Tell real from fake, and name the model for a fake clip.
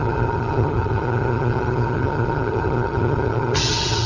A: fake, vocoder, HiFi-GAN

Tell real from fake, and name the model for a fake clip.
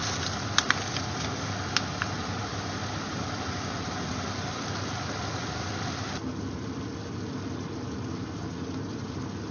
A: real